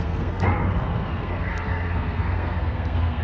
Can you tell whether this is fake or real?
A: fake